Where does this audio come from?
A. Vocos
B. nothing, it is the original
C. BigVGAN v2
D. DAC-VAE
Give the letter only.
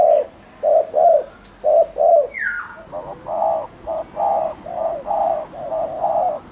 B